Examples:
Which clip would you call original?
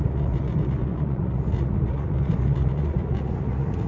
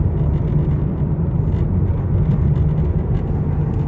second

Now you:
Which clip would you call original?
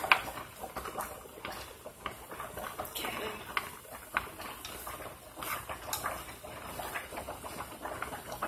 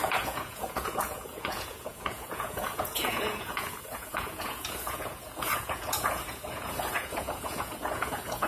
first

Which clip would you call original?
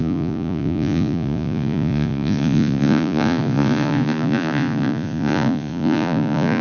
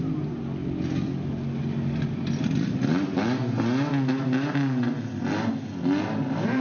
second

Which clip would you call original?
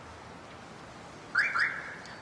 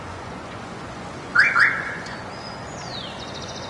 first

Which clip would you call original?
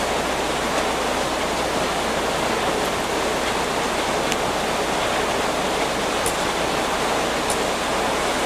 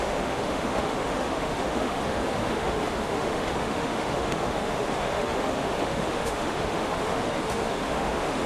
first